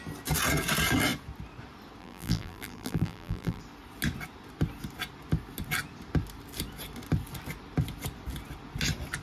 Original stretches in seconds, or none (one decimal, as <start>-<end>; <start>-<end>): 0.0-2.0; 3.6-9.2